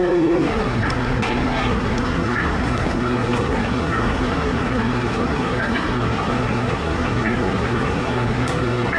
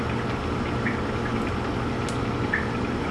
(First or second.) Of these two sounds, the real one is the second